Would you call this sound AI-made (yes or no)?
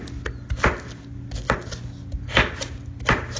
no